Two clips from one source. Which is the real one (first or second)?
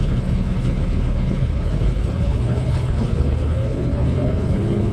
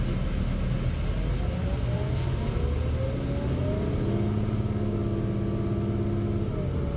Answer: second